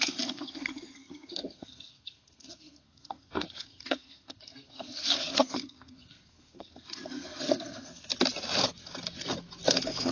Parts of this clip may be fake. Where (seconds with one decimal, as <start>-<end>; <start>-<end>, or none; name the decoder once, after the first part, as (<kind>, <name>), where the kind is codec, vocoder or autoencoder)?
0.0-8.1 (codec, SNAC); 9.7-10.1

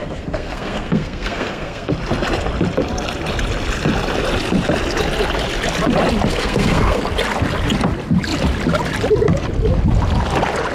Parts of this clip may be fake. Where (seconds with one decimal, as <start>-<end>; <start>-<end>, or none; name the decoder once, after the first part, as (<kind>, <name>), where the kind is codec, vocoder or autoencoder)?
0.0-1.9 (codec, SNAC); 6.3-7.0

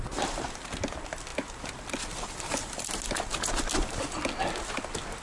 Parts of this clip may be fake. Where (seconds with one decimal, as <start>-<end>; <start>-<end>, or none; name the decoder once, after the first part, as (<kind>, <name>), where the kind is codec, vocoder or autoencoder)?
none

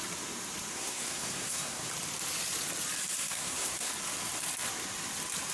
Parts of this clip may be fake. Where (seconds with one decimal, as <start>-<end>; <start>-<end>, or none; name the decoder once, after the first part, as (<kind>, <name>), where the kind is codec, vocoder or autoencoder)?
0.7-1.9 (codec, SNAC); 3.2-3.9

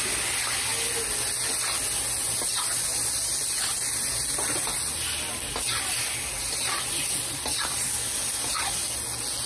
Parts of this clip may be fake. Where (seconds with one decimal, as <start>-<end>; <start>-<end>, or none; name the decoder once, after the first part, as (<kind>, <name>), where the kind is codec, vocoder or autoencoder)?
none

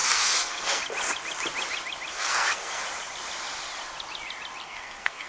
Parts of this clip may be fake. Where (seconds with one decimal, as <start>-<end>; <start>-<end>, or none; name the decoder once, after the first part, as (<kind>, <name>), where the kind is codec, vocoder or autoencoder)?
0.0-0.8 (codec, SNAC); 2.1-2.8; 4.6-5.3

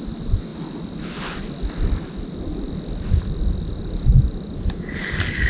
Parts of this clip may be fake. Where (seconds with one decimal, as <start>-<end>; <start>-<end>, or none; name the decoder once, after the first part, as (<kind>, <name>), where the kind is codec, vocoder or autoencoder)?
none

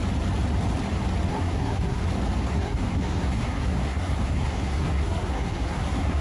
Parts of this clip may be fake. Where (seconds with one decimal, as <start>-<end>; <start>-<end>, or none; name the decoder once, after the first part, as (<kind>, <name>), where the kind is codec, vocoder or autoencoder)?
1.3-2.0 (codec, SNAC); 2.5-6.2